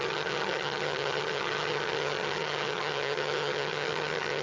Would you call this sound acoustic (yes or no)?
no